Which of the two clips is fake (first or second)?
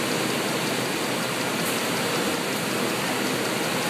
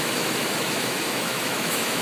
second